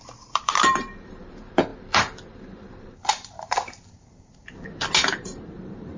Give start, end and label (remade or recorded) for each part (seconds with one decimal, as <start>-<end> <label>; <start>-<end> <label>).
0.0-4.4 remade; 4.4-5.1 recorded; 5.1-6.0 remade